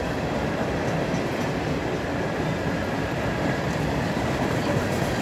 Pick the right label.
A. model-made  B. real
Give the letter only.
A